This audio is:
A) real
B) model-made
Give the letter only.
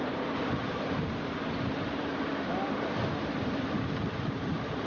B